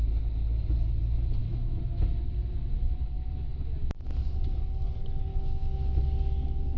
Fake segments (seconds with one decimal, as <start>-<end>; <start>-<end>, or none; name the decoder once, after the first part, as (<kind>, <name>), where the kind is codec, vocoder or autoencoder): 1.4-2.0 (autoencoder, DAC-VAE); 5.3-6.0